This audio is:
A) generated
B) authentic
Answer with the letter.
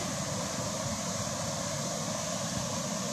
B